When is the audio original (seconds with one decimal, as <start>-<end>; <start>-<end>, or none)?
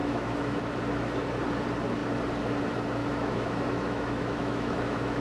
0.6-3.0